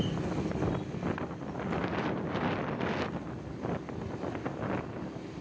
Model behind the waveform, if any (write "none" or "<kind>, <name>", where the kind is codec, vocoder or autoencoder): none